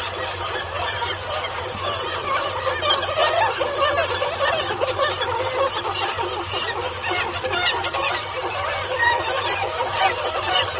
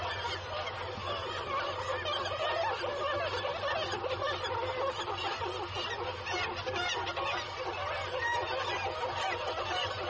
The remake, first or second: first